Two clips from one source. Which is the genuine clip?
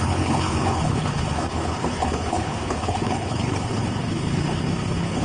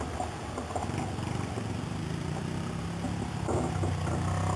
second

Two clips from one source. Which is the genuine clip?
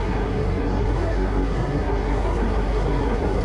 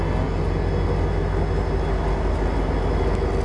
second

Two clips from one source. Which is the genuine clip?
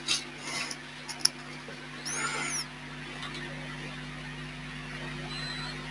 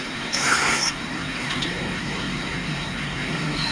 first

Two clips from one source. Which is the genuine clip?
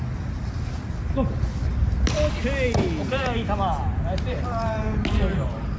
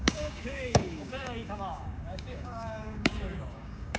first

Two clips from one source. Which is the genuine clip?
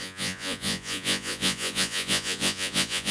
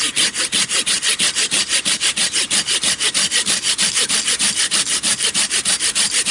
second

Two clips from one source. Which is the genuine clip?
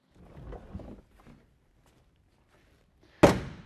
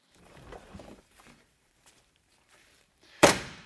first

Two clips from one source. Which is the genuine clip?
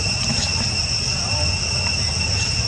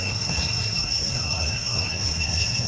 first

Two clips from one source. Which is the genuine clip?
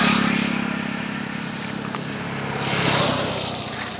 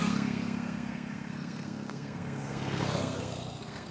first